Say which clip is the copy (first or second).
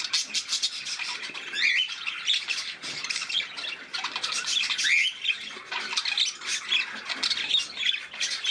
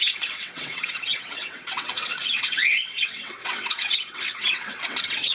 second